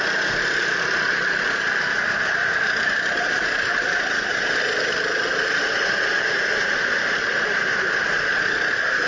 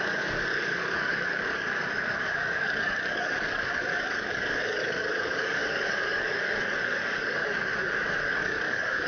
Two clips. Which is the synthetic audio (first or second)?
second